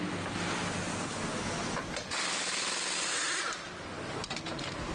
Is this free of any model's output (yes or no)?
yes